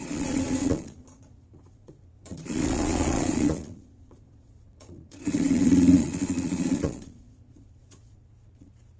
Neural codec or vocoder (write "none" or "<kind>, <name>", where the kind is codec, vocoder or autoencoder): vocoder, Vocos